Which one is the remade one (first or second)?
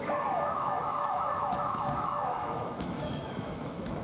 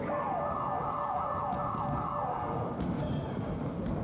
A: first